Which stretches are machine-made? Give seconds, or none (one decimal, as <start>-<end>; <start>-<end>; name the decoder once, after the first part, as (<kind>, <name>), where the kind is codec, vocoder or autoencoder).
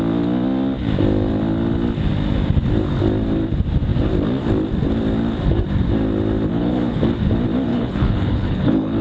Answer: 6.5-7.0 (codec, HILCodec); 7.7-9.0